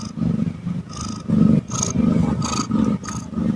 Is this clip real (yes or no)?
yes